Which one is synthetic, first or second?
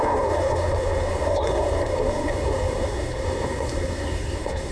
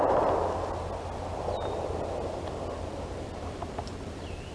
first